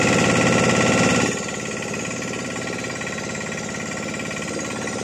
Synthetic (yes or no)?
no